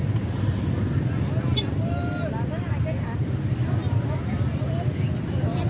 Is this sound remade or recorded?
recorded